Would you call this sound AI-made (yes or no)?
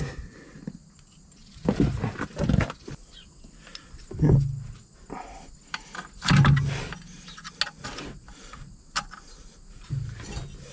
no